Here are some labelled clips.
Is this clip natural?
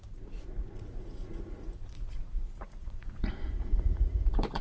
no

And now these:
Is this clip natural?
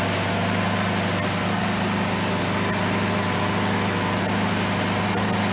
yes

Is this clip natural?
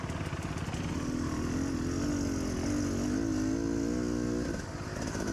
yes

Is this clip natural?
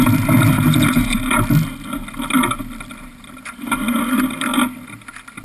yes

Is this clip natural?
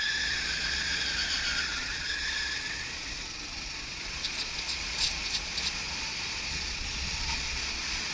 no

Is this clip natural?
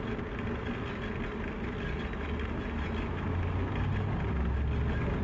yes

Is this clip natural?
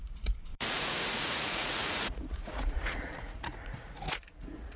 no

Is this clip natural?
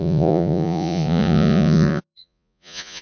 no